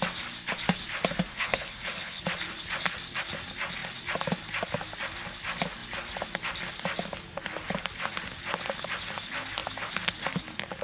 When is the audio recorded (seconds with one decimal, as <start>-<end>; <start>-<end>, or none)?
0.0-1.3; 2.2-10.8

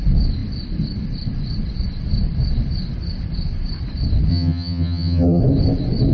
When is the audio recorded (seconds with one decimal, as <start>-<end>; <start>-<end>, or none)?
0.0-4.3; 5.4-6.1

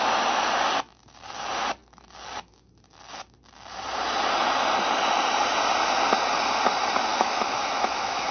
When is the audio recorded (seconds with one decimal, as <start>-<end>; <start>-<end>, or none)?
0.0-7.1

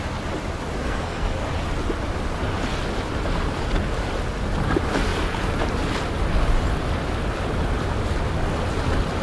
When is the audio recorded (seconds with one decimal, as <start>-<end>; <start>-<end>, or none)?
0.0-0.8; 1.5-9.2

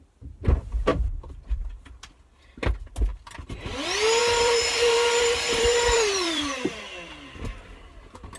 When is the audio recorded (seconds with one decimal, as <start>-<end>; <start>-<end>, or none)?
0.0-0.9; 1.7-3.1; 3.6-4.2; 6.8-8.4

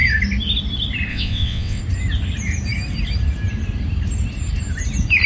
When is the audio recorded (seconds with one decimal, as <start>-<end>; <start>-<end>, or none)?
0.0-1.1; 1.8-5.3

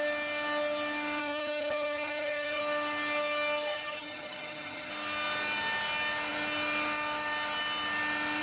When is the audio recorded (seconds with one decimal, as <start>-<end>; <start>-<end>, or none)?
0.0-1.2; 2.6-3.7; 4.9-8.4

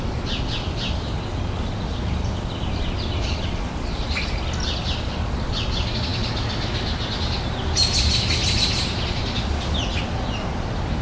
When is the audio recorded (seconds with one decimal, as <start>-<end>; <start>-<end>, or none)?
0.0-11.0